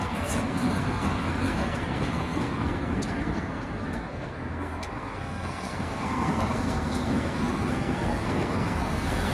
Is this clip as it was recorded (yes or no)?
no